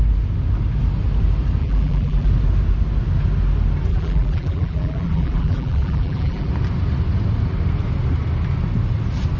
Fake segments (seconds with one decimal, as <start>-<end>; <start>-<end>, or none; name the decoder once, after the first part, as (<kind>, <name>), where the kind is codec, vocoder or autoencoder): 1.6-2.3 (vocoder, BigVGAN v2); 3.9-6.5